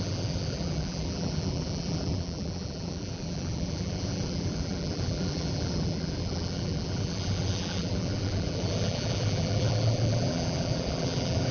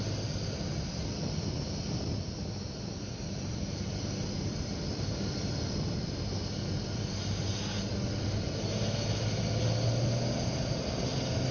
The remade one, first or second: first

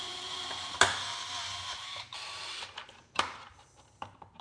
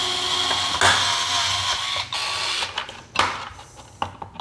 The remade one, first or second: first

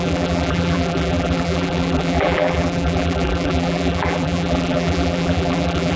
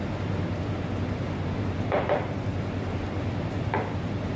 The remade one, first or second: first